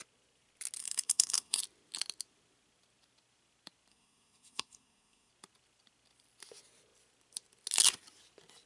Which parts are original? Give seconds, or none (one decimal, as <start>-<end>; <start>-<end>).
0.0-0.8; 1.6-3.9; 5.3-8.7

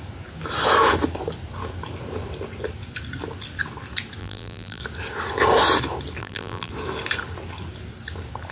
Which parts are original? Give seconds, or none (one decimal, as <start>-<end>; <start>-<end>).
0.0-4.2; 4.8-6.2; 6.7-8.5